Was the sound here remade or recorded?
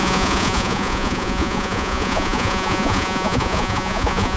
remade